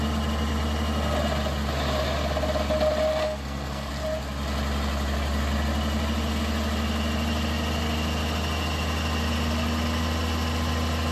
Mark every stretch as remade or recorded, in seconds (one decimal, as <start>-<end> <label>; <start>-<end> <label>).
0.0-3.2 recorded; 3.2-3.9 remade; 3.9-11.1 recorded

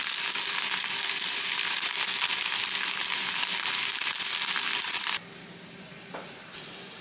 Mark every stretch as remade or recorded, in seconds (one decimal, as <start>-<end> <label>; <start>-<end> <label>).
0.0-7.0 recorded

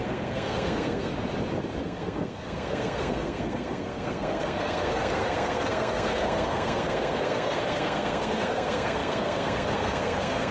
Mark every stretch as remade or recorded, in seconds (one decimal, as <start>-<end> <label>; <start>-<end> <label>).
0.0-1.1 remade; 1.1-1.8 recorded; 1.8-10.5 remade

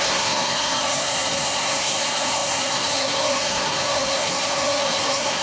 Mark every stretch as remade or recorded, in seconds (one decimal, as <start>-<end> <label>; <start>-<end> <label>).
0.0-5.4 remade

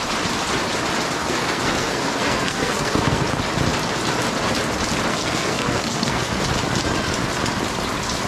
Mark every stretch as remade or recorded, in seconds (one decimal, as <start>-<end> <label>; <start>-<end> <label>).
0.0-1.2 recorded; 1.2-3.3 remade; 3.3-5.1 recorded; 5.1-6.4 remade; 6.4-8.3 recorded

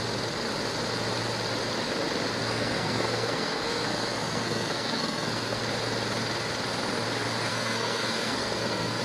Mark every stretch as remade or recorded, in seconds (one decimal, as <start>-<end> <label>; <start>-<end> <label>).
0.0-2.4 recorded; 2.4-5.6 remade; 5.6-7.5 recorded; 7.5-9.0 remade